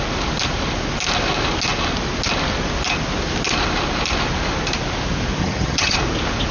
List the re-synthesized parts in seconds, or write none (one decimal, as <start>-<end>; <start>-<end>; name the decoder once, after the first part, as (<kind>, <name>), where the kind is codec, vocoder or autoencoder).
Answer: 5.4-6.0 (vocoder, HiFi-GAN)